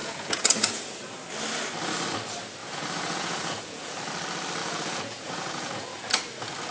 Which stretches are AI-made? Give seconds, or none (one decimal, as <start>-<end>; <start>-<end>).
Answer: 0.0-0.8; 2.6-4.0; 4.6-6.1